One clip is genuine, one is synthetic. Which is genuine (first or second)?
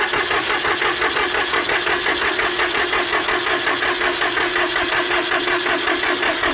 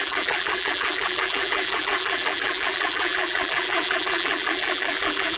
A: first